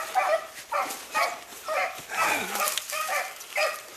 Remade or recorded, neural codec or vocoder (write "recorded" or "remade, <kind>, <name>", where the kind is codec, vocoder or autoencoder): recorded